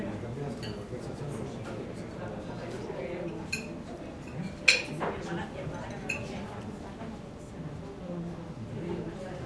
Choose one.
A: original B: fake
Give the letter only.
A